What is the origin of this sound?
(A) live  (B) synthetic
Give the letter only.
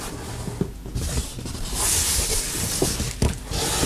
A